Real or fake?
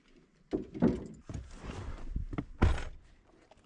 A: real